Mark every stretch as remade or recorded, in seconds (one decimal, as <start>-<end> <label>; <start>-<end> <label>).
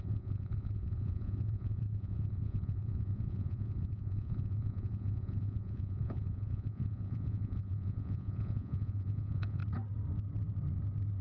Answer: 0.0-9.6 remade; 9.6-11.2 recorded